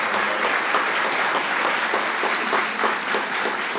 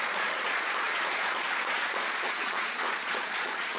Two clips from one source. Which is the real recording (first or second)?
first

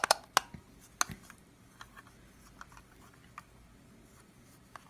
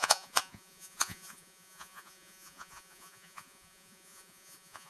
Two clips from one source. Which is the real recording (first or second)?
first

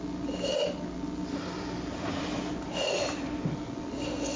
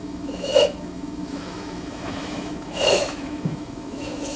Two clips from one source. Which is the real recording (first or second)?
first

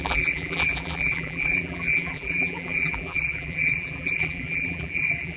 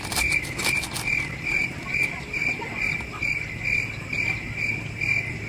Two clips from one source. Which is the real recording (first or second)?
second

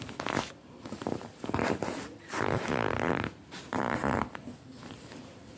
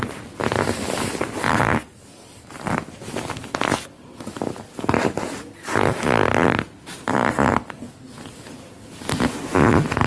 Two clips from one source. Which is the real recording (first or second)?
second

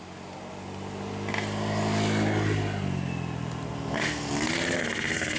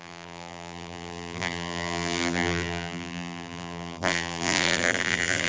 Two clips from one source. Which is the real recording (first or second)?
first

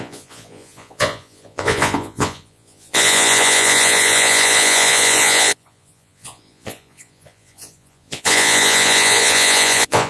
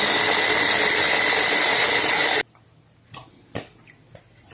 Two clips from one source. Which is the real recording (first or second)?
second